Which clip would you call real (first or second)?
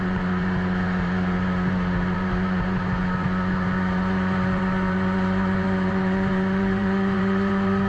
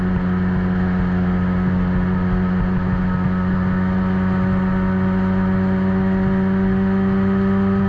second